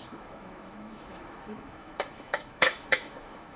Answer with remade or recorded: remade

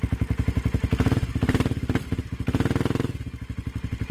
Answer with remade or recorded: recorded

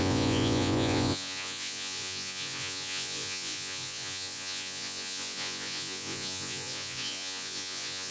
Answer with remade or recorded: remade